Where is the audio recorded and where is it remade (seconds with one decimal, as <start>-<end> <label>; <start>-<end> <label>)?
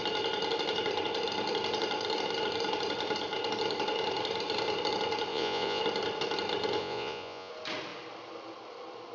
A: 0.0-5.3 recorded; 5.3-5.8 remade; 5.8-6.8 recorded; 6.8-7.5 remade; 7.5-9.1 recorded